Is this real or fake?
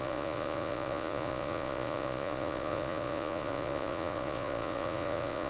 fake